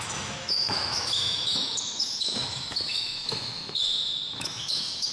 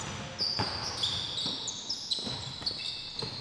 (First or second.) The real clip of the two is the second